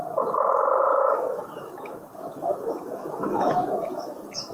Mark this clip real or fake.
fake